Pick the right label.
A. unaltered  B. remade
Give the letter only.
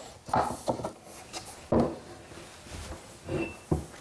A